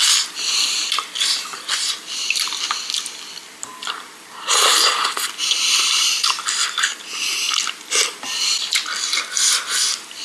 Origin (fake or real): real